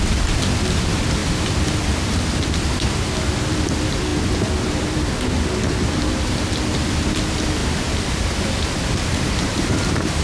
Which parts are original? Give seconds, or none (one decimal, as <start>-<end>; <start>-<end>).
1.2-3.5